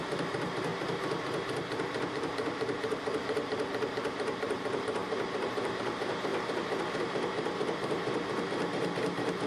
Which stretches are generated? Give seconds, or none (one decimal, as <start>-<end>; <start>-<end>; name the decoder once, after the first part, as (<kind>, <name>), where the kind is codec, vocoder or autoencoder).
0.0-0.7 (vocoder, BigVGAN v2); 2.1-8.0; 9.0-9.5